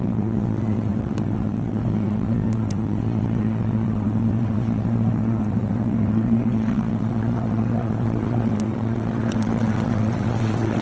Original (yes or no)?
no